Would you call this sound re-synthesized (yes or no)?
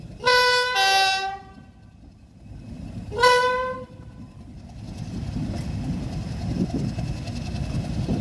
no